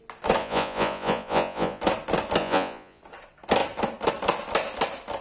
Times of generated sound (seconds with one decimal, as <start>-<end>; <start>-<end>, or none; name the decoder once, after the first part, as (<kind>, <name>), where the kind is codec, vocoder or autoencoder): 0.4-1.8 (vocoder, Vocos); 2.4-3.0